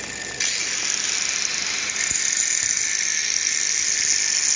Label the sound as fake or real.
real